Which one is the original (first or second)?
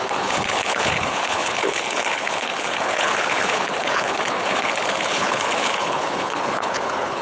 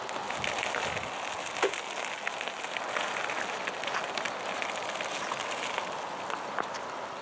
second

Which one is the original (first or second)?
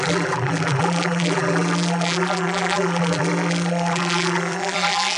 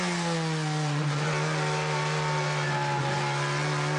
second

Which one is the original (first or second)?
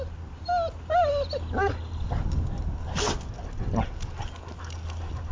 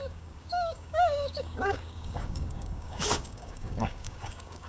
first